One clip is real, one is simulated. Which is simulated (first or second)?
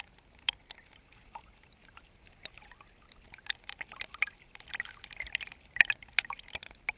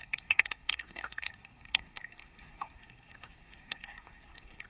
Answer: second